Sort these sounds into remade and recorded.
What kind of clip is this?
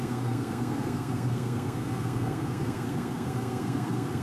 remade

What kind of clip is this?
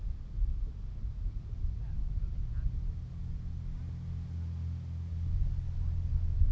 recorded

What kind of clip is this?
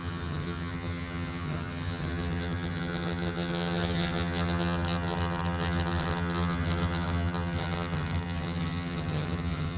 remade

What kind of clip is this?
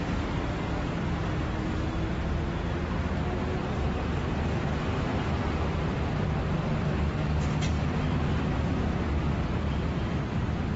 recorded